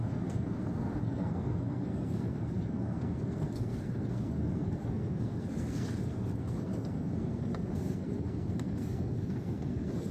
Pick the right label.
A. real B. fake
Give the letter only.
B